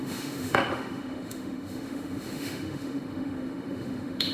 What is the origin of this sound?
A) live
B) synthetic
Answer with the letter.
B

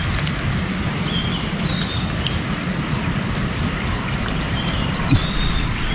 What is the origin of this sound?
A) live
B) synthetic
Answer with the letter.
A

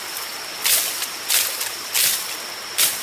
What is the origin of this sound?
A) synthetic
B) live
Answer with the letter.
B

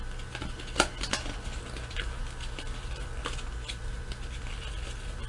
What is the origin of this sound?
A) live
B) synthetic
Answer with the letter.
A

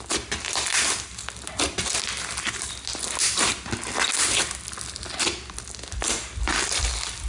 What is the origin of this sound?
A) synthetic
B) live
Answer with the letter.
B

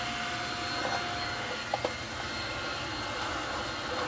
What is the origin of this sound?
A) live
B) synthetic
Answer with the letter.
A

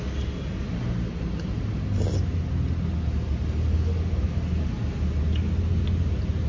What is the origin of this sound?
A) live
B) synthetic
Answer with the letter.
A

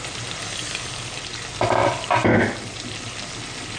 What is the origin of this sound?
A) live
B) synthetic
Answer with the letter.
A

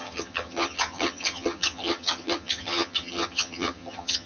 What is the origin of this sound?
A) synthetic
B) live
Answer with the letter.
A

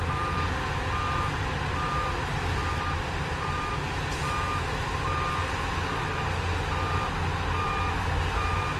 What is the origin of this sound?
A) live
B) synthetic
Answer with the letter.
A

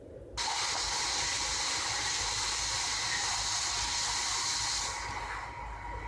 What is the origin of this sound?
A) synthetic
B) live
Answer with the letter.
B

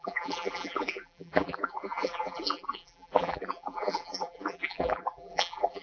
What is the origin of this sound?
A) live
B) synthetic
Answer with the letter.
B